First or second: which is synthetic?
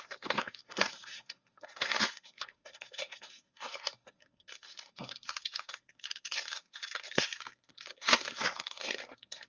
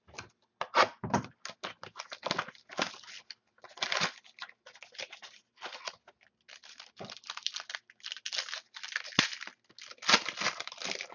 first